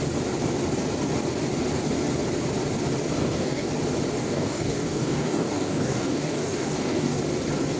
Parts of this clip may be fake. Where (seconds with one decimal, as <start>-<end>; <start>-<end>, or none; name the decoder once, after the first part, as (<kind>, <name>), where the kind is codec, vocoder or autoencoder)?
3.2-3.7 (codec, DAC); 4.2-7.2